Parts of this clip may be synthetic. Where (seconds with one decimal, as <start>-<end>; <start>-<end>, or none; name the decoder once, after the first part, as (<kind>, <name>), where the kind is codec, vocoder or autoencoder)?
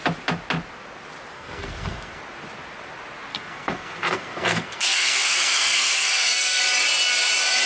1.3-2.2 (codec, SNAC); 3.3-6.6